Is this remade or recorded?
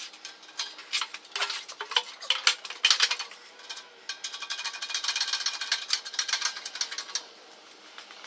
recorded